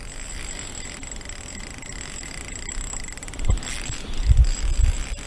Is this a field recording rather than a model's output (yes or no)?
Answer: yes